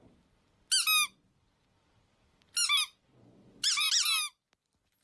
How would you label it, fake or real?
real